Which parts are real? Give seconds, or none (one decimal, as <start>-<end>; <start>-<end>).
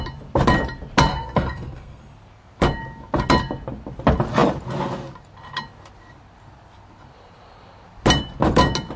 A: 0.0-1.1; 2.0-9.0